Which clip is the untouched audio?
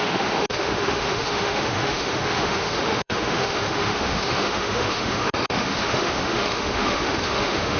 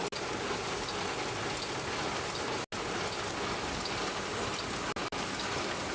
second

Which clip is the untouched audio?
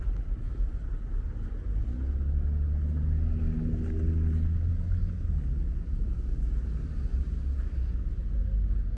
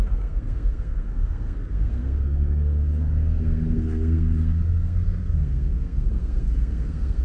first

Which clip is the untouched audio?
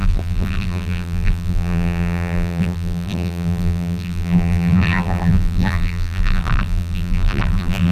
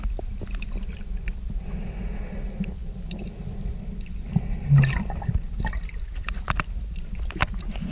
second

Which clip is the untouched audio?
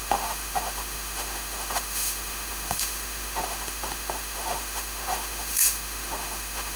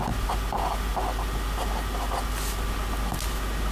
second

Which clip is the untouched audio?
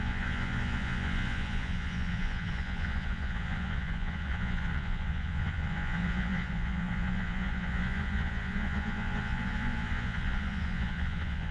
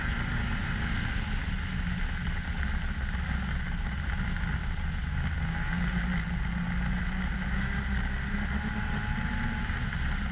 second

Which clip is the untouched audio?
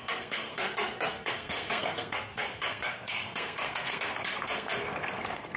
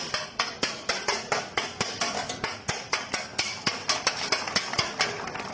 second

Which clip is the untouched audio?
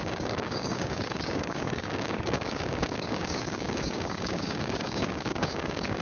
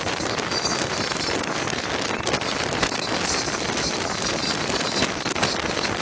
second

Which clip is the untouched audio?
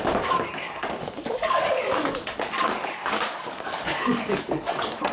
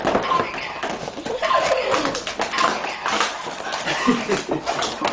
second